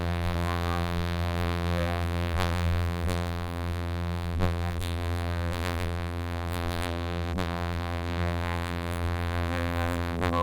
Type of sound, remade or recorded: remade